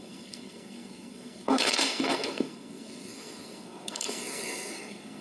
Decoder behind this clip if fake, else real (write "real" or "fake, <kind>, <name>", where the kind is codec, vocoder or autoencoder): fake, codec, SNAC